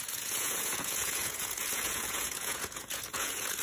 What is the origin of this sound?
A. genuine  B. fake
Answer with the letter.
B